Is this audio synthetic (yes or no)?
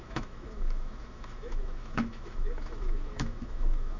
yes